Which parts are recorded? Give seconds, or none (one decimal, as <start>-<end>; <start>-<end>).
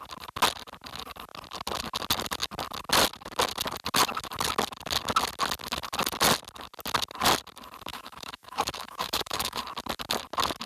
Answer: 0.0-7.9; 9.6-10.7